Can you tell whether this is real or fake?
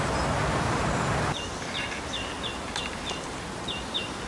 real